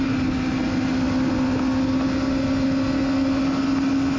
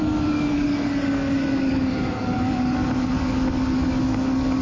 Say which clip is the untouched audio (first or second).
first